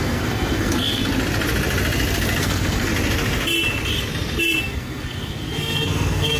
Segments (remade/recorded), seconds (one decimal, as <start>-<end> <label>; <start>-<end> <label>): 0.0-1.0 remade; 1.0-2.4 recorded; 2.4-2.9 remade; 2.9-4.6 recorded; 4.6-6.4 remade

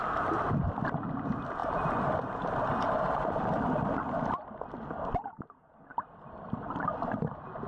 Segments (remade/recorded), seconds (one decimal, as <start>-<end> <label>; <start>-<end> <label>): 0.0-1.6 recorded; 1.6-5.4 remade; 5.4-5.9 recorded; 5.9-6.8 remade; 6.8-7.7 recorded

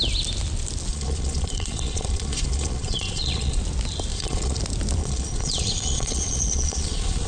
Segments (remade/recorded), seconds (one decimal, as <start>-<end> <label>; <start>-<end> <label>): 0.0-0.9 recorded; 0.9-3.6 remade; 3.6-4.1 recorded; 4.1-4.6 remade; 4.6-5.0 recorded; 5.0-7.3 remade

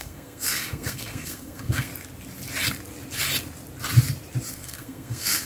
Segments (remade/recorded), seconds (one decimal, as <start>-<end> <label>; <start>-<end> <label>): 0.0-1.9 remade; 1.9-4.5 recorded; 4.5-5.5 remade

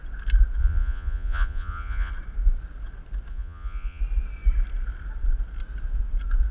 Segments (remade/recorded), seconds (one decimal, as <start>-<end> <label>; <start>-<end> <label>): 0.0-0.6 recorded; 0.6-2.1 remade; 2.1-3.3 recorded; 3.3-4.0 remade; 4.0-6.5 recorded

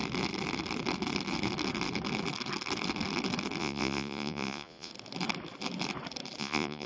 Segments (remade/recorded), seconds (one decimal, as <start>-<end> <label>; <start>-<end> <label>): 0.0-3.6 recorded; 3.6-4.9 remade; 4.9-6.4 recorded; 6.4-6.9 remade

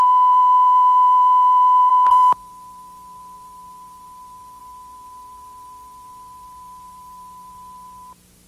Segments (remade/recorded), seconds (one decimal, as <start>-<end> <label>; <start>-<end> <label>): 0.0-8.5 recorded